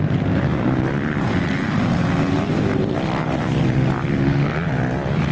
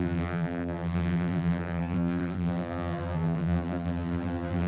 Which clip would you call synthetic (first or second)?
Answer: second